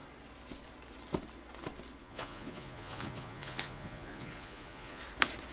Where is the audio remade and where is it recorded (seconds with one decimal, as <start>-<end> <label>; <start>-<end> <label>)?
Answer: 0.0-2.0 recorded; 2.0-5.0 remade; 5.0-5.5 recorded